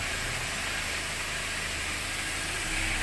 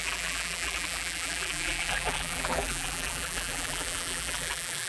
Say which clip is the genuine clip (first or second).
first